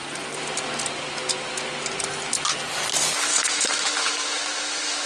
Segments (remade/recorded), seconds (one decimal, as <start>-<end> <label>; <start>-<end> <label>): 0.0-3.3 recorded; 3.3-5.1 remade

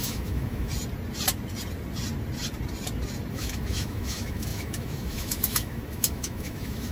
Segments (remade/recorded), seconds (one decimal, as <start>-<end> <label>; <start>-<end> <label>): 0.0-0.7 remade; 0.7-3.3 recorded; 3.3-6.9 remade

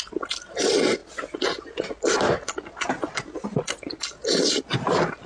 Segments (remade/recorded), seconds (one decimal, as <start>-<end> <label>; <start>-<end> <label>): 0.0-5.3 recorded

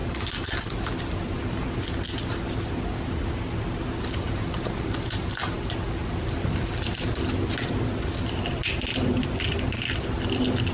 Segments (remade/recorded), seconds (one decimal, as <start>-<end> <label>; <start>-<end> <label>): 0.0-10.7 recorded